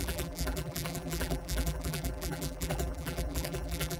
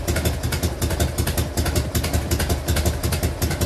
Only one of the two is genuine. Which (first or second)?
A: second